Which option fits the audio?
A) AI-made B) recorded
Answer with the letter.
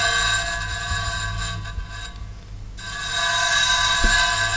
B